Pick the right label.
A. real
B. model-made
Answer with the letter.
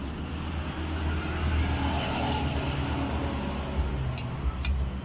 A